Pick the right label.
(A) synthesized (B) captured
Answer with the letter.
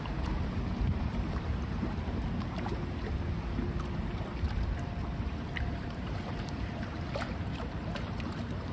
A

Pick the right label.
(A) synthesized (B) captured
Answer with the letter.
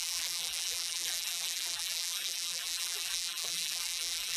A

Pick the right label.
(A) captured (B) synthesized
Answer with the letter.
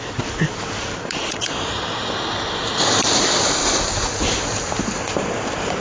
B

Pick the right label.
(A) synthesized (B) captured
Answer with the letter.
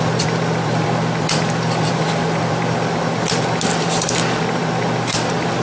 A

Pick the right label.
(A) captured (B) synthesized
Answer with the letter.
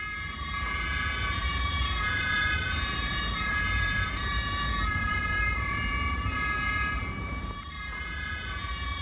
B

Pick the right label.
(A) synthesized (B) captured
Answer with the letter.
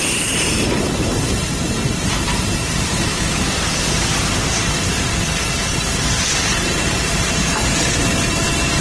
A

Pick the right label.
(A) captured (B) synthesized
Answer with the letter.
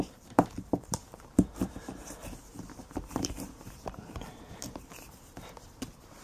B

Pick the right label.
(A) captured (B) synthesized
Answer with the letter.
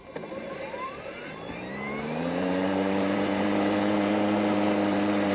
B